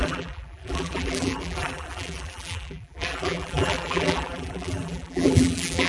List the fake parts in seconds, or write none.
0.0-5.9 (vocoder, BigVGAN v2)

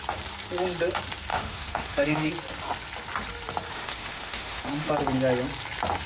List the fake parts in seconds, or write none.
1.3-2.3 (autoencoder, DAC-VAE); 3.7-4.9

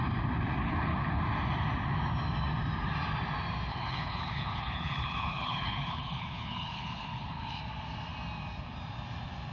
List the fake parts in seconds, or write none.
0.6-1.2 (codec, HILCodec); 3.7-7.6